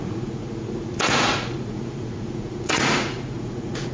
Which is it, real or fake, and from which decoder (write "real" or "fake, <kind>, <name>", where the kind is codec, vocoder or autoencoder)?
fake, vocoder, Vocos